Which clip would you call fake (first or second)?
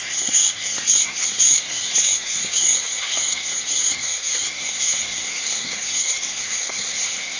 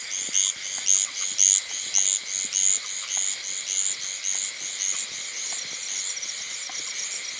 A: first